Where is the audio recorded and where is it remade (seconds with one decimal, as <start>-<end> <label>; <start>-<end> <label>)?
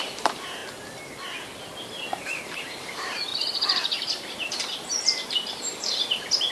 0.0-0.6 remade; 0.6-2.2 recorded; 2.2-6.5 remade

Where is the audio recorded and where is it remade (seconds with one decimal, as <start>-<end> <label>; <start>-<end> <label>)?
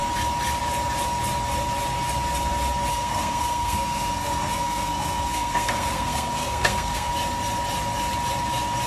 0.0-2.9 recorded; 2.9-7.1 remade; 7.1-8.9 recorded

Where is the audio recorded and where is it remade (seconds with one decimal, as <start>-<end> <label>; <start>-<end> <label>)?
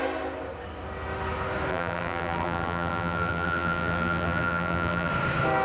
0.0-1.7 recorded; 1.7-5.1 remade; 5.1-5.6 recorded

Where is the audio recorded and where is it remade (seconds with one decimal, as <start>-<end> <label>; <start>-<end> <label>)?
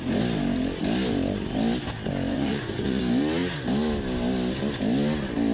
0.0-2.3 recorded; 2.3-3.0 remade; 3.0-5.5 recorded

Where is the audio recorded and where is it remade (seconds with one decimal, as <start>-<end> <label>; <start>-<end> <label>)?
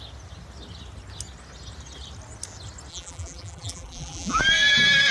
0.0-2.9 recorded; 2.9-4.4 remade; 4.4-5.1 recorded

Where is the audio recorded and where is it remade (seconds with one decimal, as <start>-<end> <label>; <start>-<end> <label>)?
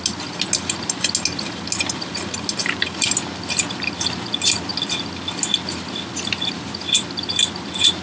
0.0-8.0 recorded